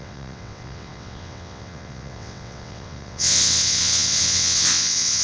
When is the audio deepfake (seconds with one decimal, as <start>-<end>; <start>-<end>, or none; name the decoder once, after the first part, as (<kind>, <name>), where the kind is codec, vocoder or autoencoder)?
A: 0.0-5.2 (vocoder, WaveNeXt)